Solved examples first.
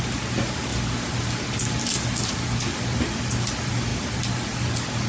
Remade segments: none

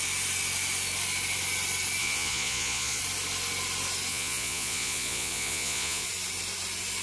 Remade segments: 2.0-3.0 (vocoder, Vocos); 4.1-6.1